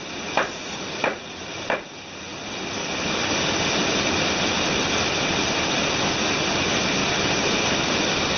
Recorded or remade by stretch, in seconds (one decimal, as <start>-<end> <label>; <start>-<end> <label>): 0.0-1.0 recorded; 1.0-1.8 remade; 1.8-7.0 recorded; 7.0-8.4 remade